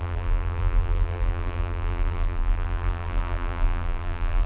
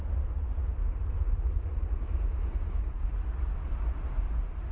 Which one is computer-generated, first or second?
first